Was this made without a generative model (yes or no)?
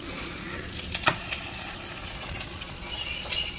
no